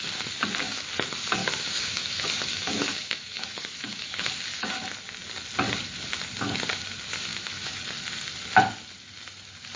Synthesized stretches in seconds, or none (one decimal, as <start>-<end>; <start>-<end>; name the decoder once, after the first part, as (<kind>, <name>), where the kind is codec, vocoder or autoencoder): 1.4-4.3 (autoencoder, DAC-VAE); 7.3-7.8